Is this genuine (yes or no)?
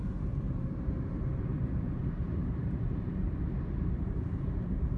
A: no